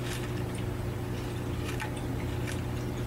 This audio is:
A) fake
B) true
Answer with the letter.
B